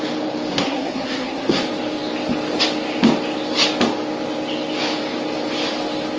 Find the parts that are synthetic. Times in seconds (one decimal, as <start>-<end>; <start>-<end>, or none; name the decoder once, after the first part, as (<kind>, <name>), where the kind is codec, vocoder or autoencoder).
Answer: 0.5-1.6 (codec, SNAC)